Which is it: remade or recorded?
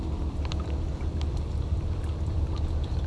recorded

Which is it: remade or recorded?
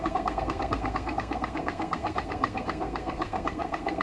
remade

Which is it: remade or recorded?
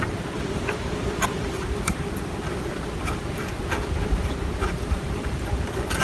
recorded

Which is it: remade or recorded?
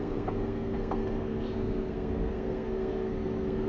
remade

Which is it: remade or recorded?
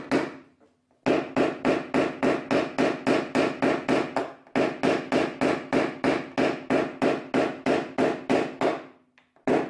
recorded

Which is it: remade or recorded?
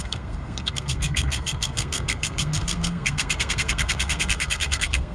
remade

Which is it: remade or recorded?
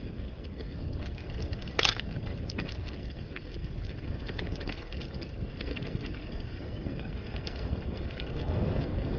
remade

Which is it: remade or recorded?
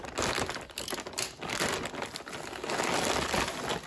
recorded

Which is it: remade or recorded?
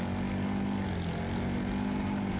recorded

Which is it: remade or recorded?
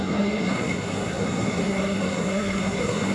remade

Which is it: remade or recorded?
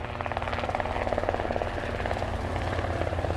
recorded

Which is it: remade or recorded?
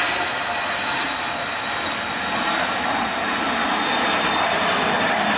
recorded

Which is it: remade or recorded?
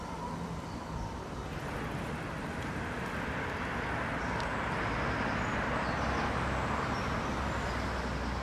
recorded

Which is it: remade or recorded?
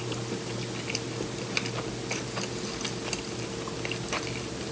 recorded